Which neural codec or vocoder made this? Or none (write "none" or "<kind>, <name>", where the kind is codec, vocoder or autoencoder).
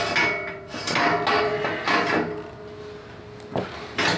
none